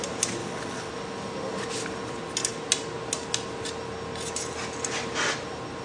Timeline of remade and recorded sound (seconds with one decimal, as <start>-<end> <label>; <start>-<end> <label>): 0.0-0.4 recorded; 0.4-0.9 remade; 0.9-5.8 recorded